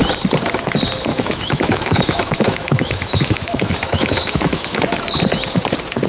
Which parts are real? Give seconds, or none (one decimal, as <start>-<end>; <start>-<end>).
0.0-1.1; 4.8-6.1